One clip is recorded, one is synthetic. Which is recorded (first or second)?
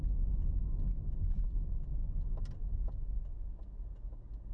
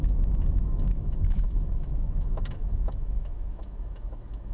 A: first